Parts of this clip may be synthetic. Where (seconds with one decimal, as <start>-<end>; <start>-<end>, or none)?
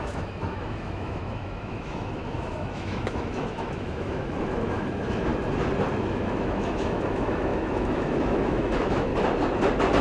0.0-5.3; 6.0-9.1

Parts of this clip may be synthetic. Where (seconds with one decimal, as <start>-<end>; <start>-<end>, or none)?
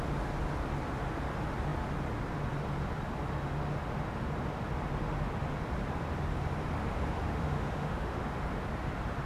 7.3-8.2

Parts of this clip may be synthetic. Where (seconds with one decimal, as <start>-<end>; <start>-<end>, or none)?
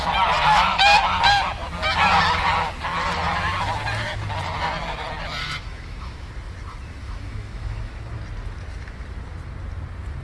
5.4-6.3; 7.0-8.0